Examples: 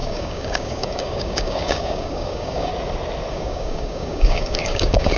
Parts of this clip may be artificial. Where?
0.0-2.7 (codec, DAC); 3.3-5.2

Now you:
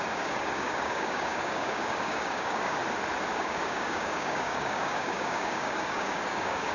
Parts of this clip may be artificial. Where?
0.0-2.8 (codec, DAC); 3.4-6.7

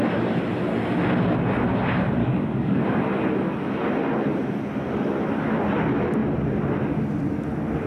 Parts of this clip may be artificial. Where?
2.2-2.8 (codec, DAC)

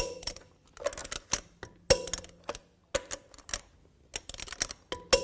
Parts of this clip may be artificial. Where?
none

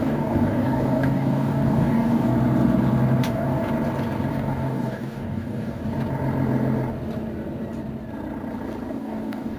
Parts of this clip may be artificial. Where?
0.0-2.3 (codec, DAC); 3.2-3.6; 4.3-5.8; 8.9-9.6

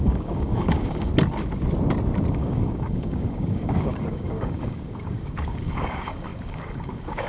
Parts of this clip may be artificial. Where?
0.0-1.1 (codec, DAC); 2.3-7.3

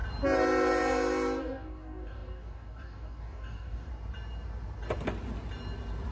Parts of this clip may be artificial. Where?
1.4-3.9 (codec, DAC)